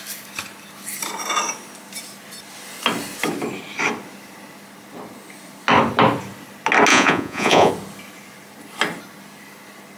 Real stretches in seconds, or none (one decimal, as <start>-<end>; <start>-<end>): 0.0-6.9; 7.7-10.0